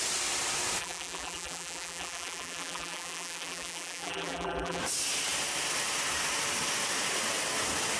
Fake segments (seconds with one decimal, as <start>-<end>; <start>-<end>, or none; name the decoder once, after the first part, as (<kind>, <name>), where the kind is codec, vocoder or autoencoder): 0.8-4.8 (vocoder, BigVGAN v2)